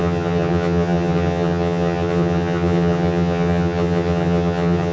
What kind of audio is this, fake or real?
fake